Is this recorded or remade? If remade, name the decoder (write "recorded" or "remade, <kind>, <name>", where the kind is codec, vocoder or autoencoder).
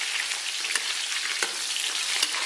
recorded